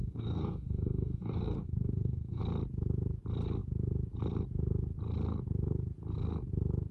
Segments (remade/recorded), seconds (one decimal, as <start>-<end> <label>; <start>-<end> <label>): 0.0-2.4 remade; 2.4-6.9 recorded